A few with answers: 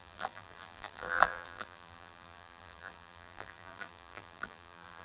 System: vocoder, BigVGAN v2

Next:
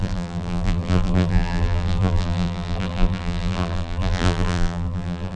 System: vocoder, BigVGAN v2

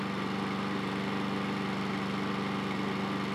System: none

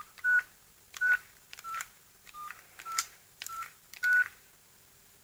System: vocoder, BigVGAN v2